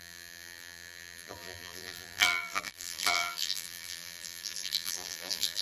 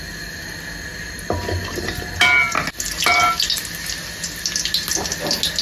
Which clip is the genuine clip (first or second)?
second